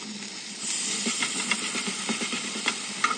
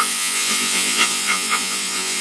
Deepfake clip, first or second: second